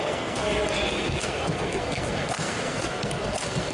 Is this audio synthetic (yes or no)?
yes